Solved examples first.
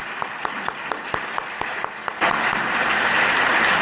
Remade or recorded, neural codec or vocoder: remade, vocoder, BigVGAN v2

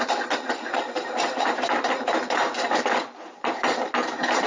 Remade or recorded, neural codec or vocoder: remade, vocoder, BigVGAN v2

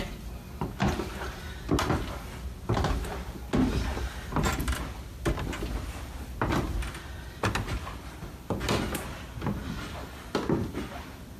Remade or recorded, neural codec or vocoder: recorded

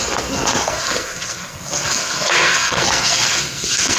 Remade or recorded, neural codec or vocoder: remade, codec, SNAC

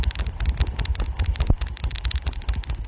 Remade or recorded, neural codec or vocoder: recorded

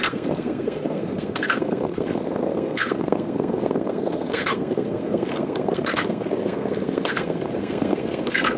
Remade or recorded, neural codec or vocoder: remade, codec, SNAC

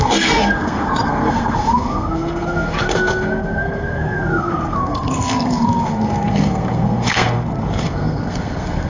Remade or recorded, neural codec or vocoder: remade, codec, SNAC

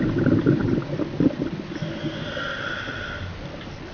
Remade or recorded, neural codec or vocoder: recorded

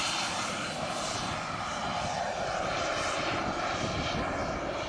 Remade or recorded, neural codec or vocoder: recorded